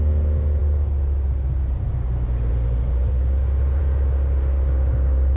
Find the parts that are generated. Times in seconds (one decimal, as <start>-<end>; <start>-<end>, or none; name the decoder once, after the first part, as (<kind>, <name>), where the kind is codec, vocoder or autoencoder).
none